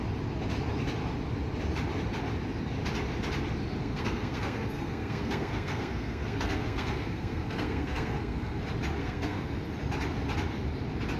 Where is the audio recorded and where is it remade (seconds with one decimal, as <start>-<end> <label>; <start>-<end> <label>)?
0.0-3.8 recorded; 3.8-8.6 remade; 8.6-9.0 recorded; 9.0-9.5 remade; 9.5-11.2 recorded